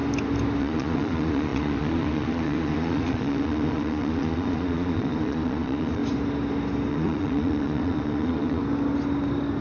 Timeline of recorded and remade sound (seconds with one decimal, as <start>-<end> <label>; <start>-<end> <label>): 0.0-0.6 recorded; 0.6-6.0 remade; 6.0-6.9 recorded; 6.9-8.6 remade; 8.6-9.6 recorded